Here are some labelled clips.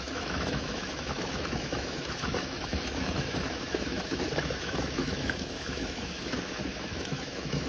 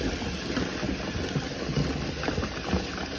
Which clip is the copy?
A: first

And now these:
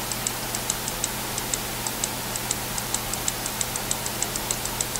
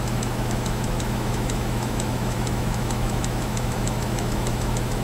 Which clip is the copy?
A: second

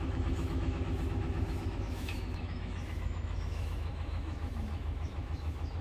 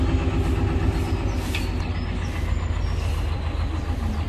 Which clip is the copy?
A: first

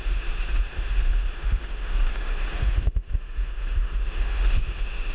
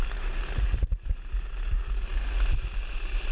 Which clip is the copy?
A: first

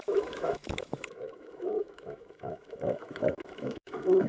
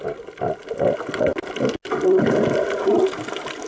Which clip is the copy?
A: first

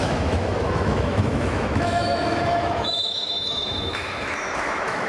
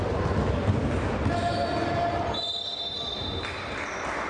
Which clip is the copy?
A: first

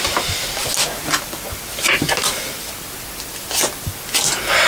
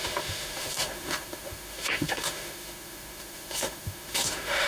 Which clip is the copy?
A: second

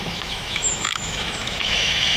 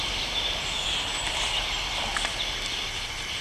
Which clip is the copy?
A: first